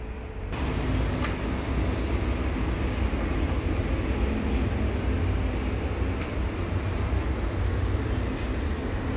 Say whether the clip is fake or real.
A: real